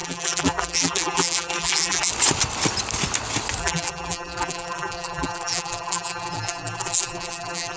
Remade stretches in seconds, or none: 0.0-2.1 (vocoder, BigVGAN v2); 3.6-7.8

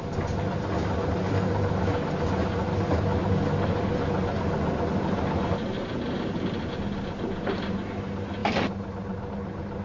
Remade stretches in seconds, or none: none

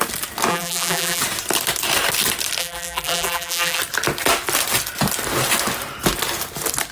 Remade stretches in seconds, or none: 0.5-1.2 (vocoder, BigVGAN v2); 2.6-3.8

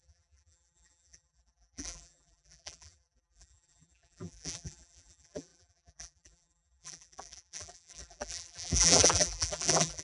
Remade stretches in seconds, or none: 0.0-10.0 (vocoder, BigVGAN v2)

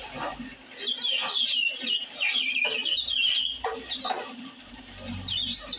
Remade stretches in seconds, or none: none

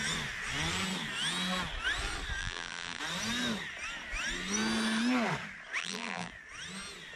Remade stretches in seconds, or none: 2.4-3.0 (vocoder, BigVGAN v2); 5.8-6.3

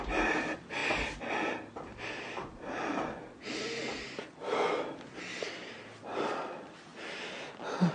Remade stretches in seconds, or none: 0.0-6.9 (vocoder, BigVGAN v2)

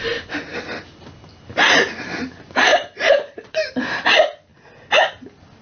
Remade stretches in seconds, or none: 2.7-3.7 (vocoder, BigVGAN v2)